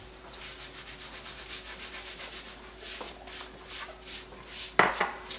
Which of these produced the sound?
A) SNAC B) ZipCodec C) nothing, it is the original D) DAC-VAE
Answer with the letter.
C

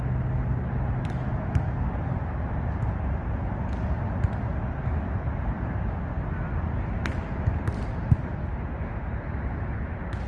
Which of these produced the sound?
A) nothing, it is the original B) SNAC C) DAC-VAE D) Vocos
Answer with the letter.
A